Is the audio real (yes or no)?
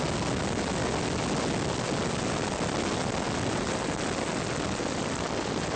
yes